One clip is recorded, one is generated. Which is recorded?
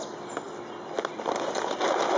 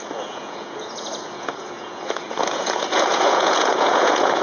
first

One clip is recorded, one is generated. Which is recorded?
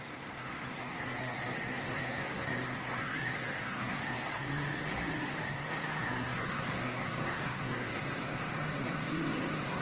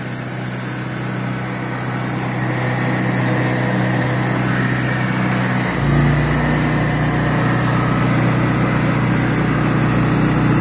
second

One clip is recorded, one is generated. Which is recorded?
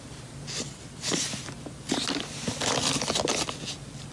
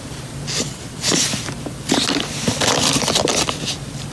first